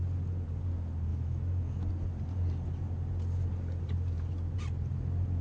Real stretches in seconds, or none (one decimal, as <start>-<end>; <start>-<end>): 0.0-1.1; 1.9-5.4